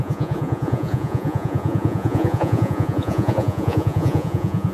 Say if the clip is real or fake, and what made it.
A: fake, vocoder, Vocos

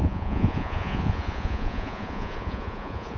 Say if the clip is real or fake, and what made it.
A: fake, vocoder, Vocos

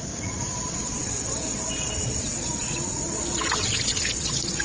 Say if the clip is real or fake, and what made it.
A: fake, vocoder, Vocos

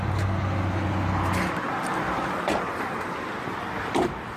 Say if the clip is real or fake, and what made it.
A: real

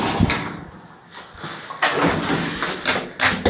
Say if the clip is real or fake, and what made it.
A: real